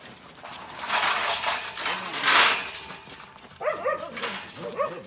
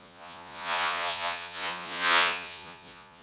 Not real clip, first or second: second